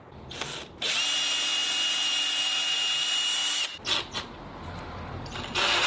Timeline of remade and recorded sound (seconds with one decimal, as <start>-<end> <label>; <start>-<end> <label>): 0.0-5.9 recorded